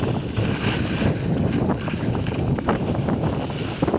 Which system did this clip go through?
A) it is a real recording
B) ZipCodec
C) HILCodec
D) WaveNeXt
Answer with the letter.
A